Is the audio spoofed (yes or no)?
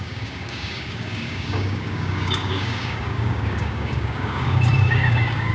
yes